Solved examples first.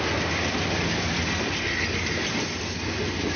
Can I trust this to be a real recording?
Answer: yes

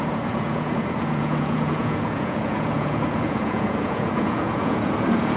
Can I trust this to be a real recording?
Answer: no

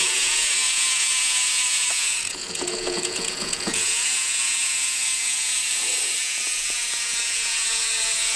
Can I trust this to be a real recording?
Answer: no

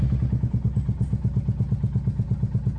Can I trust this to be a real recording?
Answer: yes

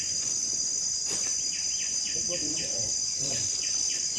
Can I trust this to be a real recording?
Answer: no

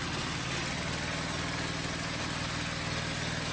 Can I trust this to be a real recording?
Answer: yes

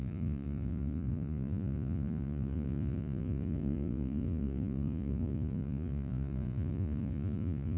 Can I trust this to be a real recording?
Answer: no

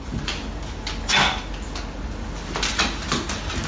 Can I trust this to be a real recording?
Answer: yes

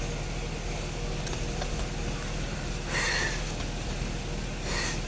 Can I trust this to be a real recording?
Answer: yes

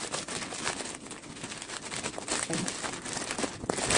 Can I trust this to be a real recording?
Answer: yes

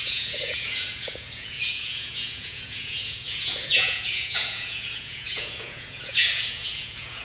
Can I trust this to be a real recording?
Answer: no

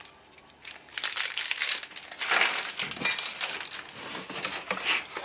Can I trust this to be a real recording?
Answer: yes